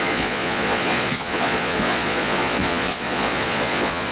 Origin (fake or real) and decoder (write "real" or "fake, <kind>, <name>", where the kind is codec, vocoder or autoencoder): fake, vocoder, Vocos